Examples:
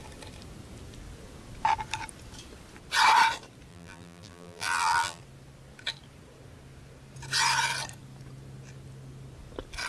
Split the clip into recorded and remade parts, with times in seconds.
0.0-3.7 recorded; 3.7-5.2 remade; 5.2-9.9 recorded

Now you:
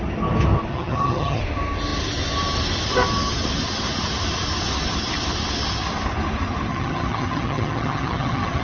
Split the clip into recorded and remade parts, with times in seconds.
0.0-0.7 recorded; 0.7-1.4 remade; 1.4-6.7 recorded; 6.7-8.6 remade